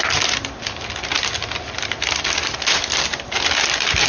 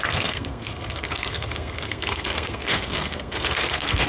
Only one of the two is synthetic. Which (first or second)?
second